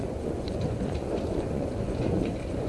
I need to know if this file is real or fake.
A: fake